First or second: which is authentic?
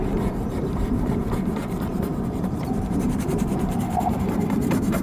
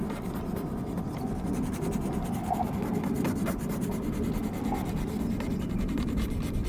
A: second